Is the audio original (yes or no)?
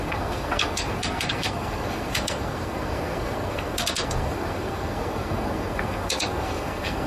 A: no